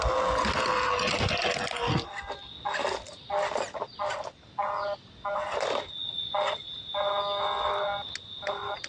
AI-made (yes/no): no